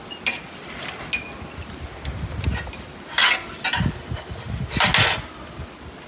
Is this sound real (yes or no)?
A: yes